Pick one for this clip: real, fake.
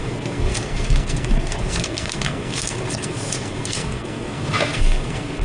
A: fake